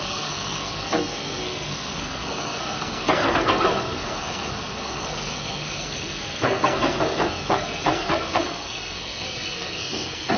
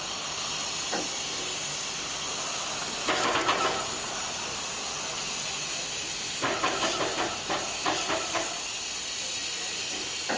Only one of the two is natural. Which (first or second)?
second